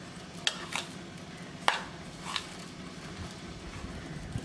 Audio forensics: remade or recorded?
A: recorded